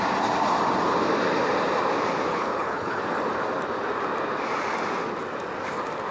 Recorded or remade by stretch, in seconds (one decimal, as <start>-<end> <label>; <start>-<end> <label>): 0.0-2.3 recorded; 2.3-3.0 remade; 3.0-6.1 recorded